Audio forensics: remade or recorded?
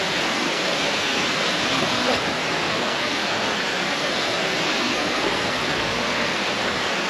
remade